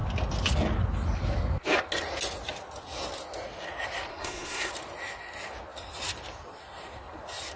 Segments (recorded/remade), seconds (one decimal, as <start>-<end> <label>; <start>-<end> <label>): 0.0-4.1 recorded; 4.1-4.7 remade; 4.7-7.6 recorded